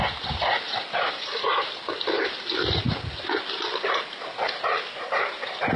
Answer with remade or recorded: recorded